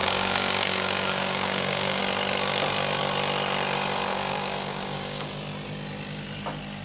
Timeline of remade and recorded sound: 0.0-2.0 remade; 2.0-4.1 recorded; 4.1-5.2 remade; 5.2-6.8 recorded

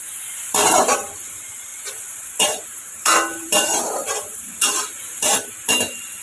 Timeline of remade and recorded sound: 0.0-6.2 remade